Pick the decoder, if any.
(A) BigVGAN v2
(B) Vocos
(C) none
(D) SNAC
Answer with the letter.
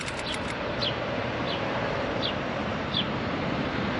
A